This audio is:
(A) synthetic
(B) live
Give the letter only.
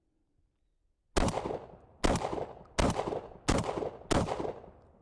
B